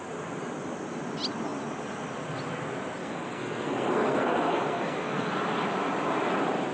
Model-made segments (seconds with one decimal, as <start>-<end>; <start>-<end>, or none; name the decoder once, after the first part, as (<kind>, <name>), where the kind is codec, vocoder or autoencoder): 3.0-5.3 (codec, SNAC)

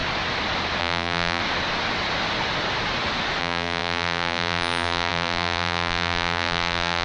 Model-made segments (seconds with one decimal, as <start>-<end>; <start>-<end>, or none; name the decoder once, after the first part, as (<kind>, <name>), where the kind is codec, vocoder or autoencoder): 0.8-1.4 (vocoder, BigVGAN v2); 3.4-7.0

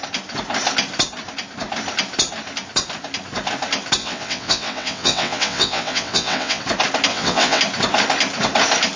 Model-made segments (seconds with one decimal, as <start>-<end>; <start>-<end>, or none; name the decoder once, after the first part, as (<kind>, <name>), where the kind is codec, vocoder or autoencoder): 4.0-6.6 (vocoder, WaveNeXt); 7.1-7.6

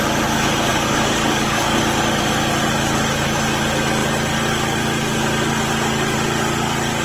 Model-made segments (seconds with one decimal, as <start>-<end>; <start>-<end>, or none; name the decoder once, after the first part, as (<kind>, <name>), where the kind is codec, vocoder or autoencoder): 0.7-1.8 (codec, DAC)